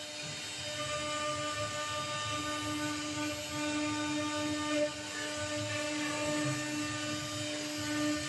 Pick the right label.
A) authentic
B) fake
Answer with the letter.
A